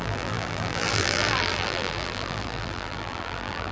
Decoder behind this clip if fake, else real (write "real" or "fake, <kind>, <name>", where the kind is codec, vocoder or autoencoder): fake, vocoder, BigVGAN v2